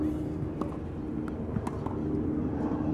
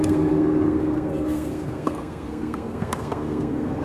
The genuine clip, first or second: first